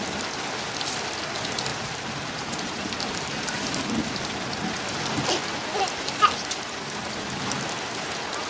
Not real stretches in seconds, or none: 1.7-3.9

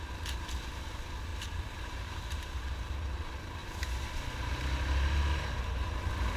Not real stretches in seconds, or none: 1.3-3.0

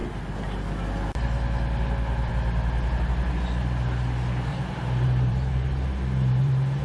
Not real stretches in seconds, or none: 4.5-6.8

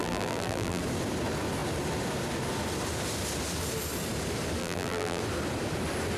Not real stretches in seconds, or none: 0.0-0.8; 4.6-5.2

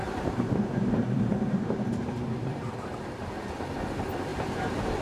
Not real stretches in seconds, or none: 0.0-3.0; 4.3-5.0

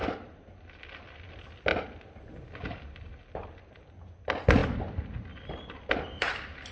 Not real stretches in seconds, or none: none

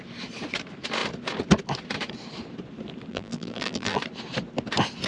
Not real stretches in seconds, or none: 3.1-4.0